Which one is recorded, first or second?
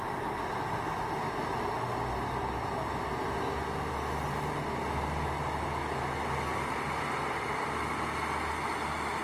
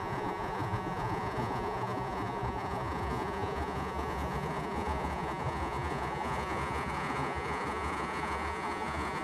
first